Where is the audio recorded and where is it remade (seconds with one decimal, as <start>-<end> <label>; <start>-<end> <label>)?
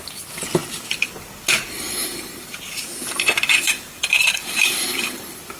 0.0-2.0 recorded; 2.0-5.6 remade